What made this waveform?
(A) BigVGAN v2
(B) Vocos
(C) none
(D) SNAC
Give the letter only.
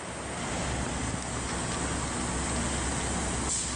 C